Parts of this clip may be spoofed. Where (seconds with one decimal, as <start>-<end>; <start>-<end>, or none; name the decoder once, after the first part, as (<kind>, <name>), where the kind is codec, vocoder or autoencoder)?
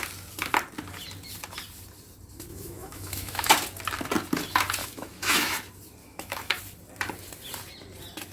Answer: 2.5-3.5 (autoencoder, DAC-VAE); 4.8-5.6; 6.0-6.6